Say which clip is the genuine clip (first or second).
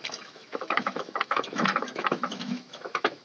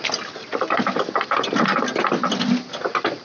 second